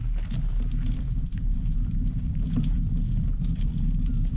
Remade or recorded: remade